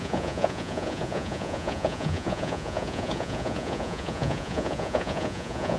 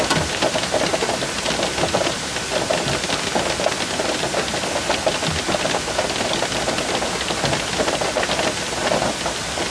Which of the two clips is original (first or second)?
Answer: second